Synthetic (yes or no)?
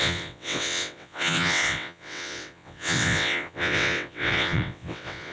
yes